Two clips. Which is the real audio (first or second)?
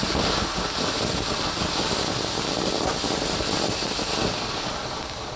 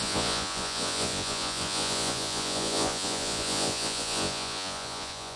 first